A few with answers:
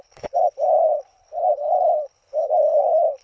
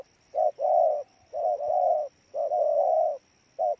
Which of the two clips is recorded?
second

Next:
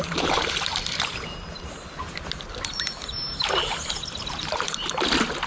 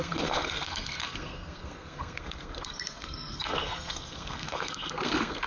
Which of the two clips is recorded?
first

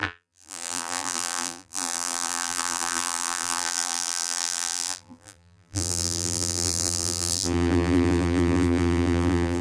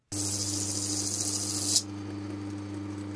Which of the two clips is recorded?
second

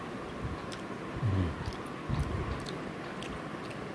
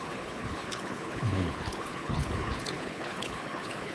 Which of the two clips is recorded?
first